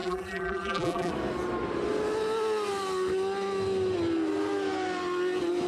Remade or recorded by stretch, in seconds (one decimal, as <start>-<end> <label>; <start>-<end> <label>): 0.0-1.1 remade; 1.1-5.7 recorded